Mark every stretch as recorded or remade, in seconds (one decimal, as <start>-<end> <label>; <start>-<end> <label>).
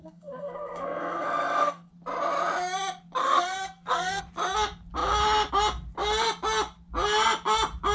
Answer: 0.0-1.9 remade; 1.9-3.2 recorded; 3.2-4.2 remade; 4.2-7.9 recorded